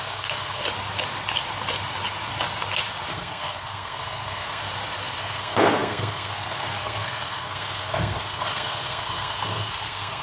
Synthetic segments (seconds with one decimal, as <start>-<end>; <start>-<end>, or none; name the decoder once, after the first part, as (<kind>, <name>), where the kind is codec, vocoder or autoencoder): 0.0-0.6 (codec, SNAC); 3.1-4.6; 5.2-10.2